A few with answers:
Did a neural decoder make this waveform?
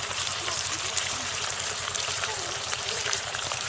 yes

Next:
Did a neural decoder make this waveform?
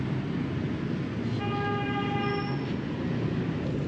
no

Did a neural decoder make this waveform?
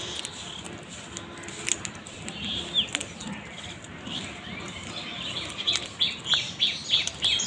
no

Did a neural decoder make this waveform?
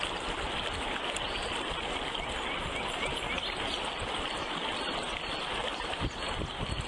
no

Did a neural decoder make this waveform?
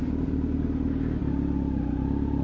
no